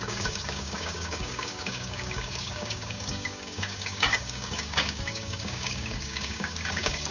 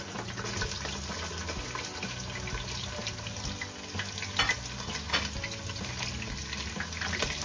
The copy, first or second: first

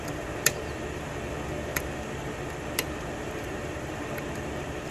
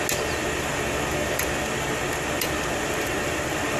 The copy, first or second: first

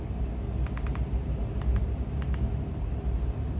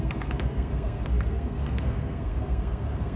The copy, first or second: second